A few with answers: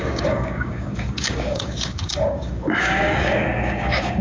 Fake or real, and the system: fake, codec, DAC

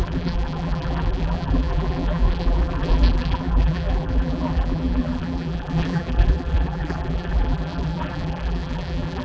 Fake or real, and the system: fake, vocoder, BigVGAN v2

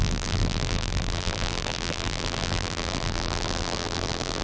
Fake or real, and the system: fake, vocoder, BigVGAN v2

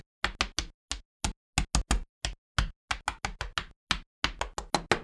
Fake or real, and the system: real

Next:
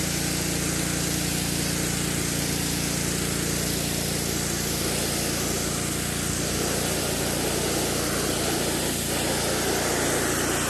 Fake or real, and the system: real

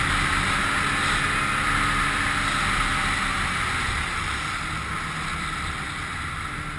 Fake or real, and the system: real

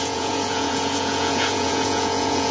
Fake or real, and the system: fake, vocoder, Vocos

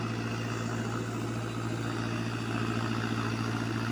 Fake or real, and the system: real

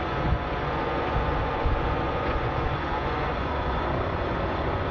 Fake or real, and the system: fake, vocoder, Vocos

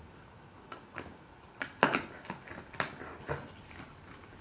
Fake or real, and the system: real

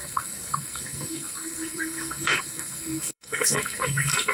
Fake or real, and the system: fake, codec, SNAC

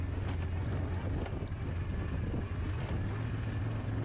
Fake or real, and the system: fake, vocoder, BigVGAN v2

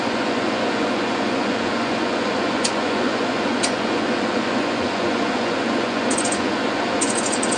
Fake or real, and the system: fake, vocoder, Vocos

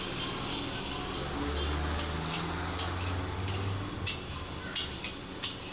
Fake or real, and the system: real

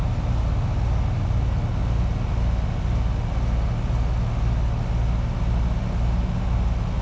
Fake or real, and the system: real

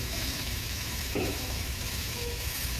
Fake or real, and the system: fake, autoencoder, DAC-VAE